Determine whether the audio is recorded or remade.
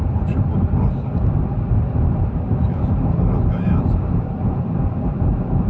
remade